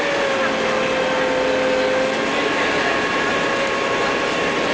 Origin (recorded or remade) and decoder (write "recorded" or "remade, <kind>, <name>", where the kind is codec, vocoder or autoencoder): recorded